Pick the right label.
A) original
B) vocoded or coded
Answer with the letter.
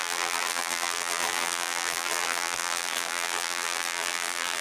B